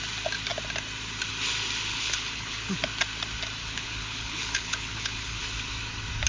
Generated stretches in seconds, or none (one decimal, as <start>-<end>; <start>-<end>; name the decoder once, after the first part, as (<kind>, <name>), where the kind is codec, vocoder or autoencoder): 1.9-2.8 (codec, HILCodec); 3.6-5.4